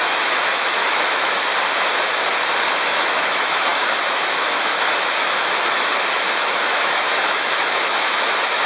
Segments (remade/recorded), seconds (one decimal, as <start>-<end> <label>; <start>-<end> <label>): 0.0-1.5 remade; 1.5-2.7 recorded; 2.7-8.7 remade

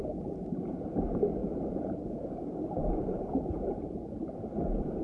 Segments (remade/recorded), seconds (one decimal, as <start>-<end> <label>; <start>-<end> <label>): 0.0-1.4 recorded; 1.4-4.3 remade; 4.3-5.0 recorded

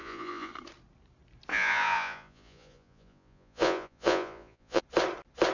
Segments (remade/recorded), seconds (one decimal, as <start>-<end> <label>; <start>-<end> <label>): 0.0-0.5 remade; 0.5-1.5 recorded; 1.5-4.8 remade; 4.8-5.5 recorded

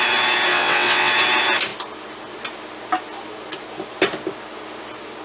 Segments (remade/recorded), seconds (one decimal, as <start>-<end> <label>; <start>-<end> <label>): 0.0-0.5 recorded; 0.5-1.1 remade; 1.1-5.2 recorded